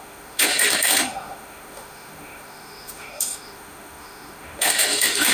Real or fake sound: fake